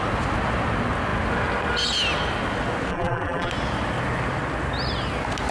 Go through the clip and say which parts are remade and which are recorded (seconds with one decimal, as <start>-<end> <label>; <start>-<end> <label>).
0.0-2.9 recorded; 2.9-3.5 remade; 3.5-5.5 recorded